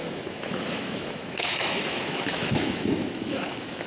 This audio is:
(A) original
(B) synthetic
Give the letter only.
B